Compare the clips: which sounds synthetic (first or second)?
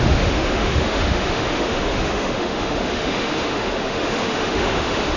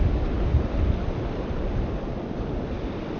first